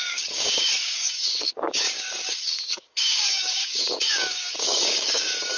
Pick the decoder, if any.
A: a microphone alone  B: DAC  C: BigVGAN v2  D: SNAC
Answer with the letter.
B